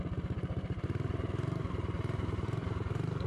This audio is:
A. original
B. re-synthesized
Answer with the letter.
B